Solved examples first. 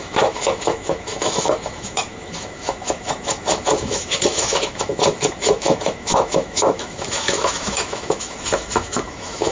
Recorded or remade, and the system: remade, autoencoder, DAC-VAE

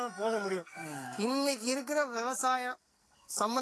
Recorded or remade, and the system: remade, codec, SNAC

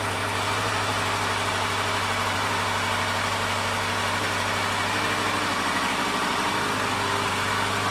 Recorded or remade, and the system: recorded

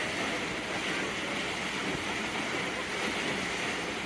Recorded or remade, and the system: recorded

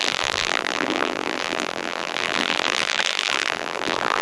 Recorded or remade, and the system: remade, vocoder, BigVGAN v2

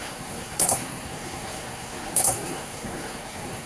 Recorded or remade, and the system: remade, codec, SNAC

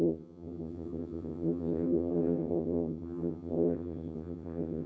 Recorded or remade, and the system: remade, vocoder, HiFi-GAN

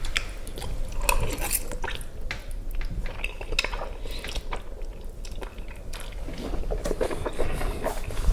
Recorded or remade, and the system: recorded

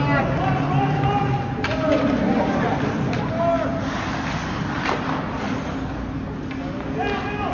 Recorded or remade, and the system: recorded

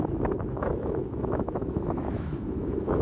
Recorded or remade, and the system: remade, autoencoder, DAC-VAE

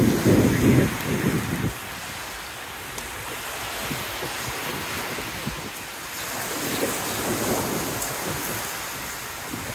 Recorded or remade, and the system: recorded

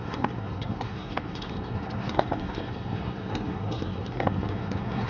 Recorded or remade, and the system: remade, codec, SNAC